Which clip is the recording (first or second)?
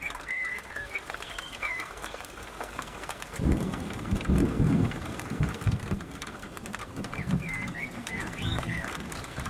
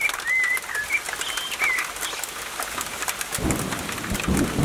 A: second